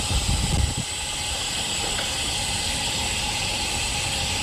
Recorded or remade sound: recorded